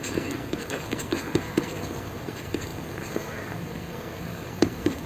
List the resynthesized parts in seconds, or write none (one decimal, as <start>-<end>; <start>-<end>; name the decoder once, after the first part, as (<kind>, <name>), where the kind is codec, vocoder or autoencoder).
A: 0.0-5.1 (codec, SNAC)

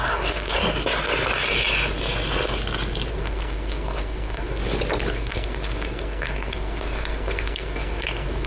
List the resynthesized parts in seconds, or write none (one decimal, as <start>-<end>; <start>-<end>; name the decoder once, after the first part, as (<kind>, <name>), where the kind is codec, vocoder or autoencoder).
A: 0.0-0.6 (codec, SNAC); 3.1-4.6; 5.1-8.5

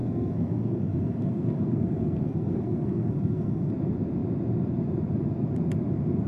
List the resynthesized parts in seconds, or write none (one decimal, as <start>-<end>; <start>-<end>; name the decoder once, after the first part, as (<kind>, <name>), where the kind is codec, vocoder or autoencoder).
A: 0.0-3.7 (codec, SNAC)

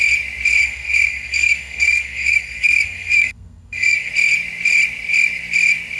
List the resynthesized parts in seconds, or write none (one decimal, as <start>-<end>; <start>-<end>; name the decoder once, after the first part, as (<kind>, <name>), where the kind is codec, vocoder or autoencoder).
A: 0.5-4.1 (codec, SNAC)

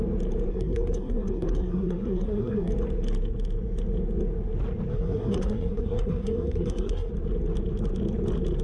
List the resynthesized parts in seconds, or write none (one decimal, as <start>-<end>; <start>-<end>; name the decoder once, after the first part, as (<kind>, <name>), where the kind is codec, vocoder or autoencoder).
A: 0.5-2.7 (codec, SNAC); 4.9-7.1

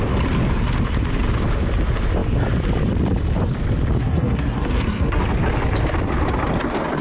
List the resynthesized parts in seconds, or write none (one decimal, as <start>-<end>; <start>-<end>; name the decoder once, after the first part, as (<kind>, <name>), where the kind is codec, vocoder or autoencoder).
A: 4.0-5.2 (codec, SNAC)